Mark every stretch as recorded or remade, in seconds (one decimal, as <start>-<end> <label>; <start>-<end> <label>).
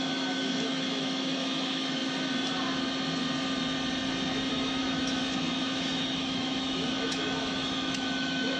0.0-2.0 remade; 2.0-4.5 recorded; 4.5-8.6 remade